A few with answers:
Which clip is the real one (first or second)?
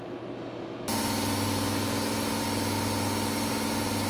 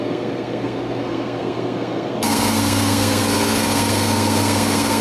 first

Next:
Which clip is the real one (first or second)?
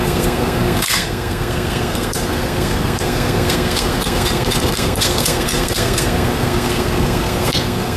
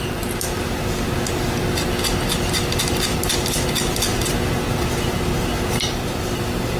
second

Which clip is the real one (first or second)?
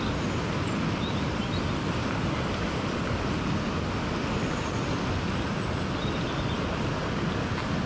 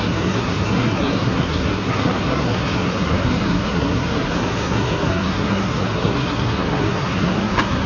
first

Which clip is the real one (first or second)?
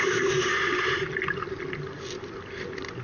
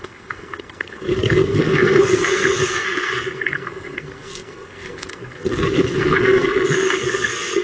first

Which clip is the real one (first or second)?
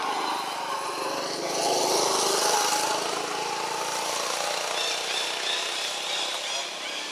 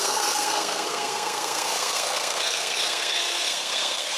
first